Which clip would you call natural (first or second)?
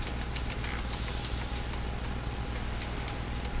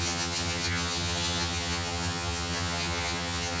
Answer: first